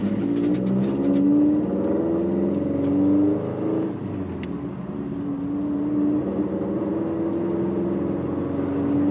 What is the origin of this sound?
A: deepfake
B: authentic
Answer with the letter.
B